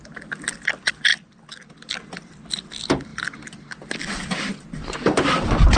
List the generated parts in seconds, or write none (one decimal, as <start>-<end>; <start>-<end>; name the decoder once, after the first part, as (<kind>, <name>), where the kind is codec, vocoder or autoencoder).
none

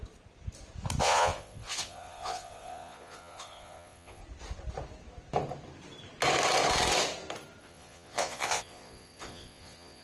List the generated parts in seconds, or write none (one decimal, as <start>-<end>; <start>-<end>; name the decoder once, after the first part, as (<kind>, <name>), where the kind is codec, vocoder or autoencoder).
1.0-4.2 (vocoder, Vocos); 7.6-10.0